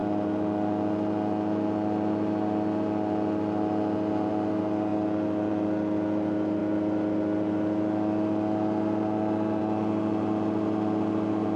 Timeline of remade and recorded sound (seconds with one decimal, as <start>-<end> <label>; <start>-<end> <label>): 0.0-11.6 recorded